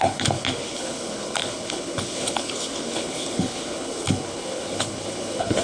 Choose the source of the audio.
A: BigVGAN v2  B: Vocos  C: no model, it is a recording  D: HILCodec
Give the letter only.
D